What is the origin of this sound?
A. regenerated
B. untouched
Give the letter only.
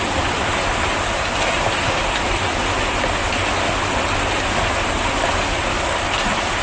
B